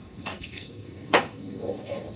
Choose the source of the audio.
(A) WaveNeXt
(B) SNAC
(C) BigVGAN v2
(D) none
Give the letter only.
B